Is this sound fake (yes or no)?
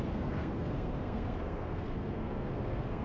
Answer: yes